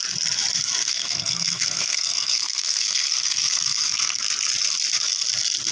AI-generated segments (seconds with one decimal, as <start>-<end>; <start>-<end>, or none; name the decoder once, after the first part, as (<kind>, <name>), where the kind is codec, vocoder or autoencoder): 0.8-4.2 (codec, SNAC)